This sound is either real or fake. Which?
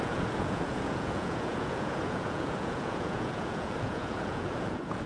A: fake